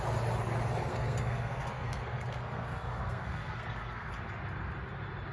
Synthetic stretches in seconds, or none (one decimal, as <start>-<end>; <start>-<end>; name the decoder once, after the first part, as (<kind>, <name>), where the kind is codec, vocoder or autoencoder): 0.9-4.1 (codec, SNAC)